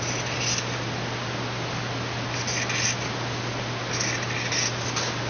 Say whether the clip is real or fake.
real